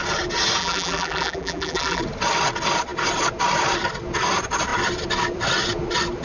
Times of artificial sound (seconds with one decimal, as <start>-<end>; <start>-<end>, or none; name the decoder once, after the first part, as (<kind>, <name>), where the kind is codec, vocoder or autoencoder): 0.6-2.0 (vocoder, BigVGAN v2)